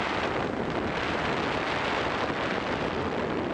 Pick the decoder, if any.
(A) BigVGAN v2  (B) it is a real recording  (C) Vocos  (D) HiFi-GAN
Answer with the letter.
B